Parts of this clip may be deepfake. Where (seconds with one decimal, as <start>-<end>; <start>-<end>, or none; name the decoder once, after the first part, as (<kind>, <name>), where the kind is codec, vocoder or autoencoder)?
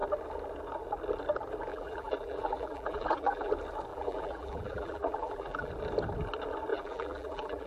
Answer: 1.7-3.5 (vocoder, BigVGAN v2); 3.9-5.7; 6.7-7.7